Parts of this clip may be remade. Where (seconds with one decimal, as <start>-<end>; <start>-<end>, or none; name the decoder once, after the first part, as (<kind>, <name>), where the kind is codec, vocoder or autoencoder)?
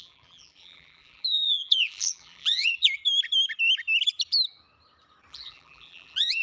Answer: 0.0-3.0 (vocoder, BigVGAN v2); 5.3-6.4